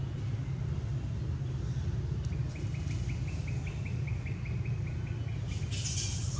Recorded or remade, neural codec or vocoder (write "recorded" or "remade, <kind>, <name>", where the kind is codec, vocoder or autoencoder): recorded